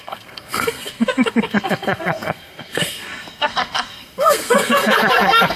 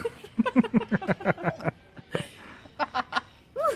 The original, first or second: second